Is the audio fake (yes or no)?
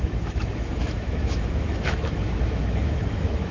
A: yes